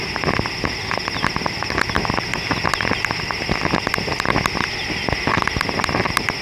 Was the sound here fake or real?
real